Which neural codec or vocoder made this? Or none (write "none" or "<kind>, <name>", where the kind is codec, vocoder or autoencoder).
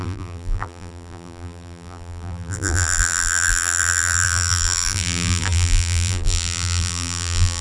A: vocoder, BigVGAN v2